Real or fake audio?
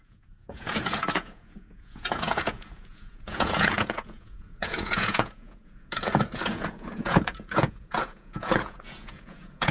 fake